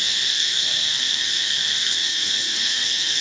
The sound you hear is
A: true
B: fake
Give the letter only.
B